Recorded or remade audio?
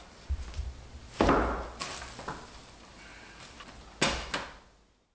recorded